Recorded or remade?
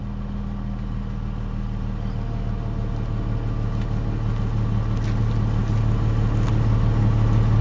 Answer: recorded